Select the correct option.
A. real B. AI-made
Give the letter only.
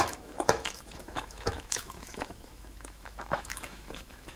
B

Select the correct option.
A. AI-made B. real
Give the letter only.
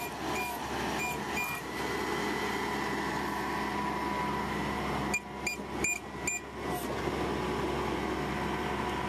B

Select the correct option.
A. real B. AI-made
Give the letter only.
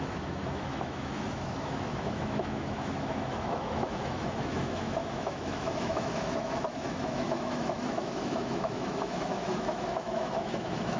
B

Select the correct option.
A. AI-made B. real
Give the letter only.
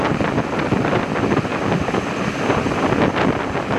B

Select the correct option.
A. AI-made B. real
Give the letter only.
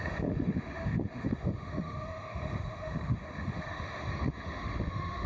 A